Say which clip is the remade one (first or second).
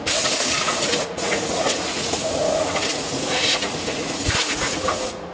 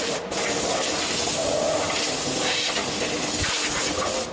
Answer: first